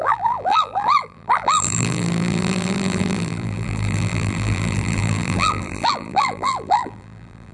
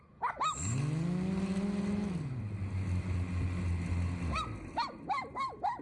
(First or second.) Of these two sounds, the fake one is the first